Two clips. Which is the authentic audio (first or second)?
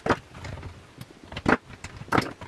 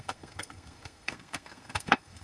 first